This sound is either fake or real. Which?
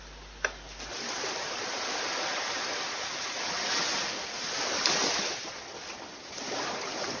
fake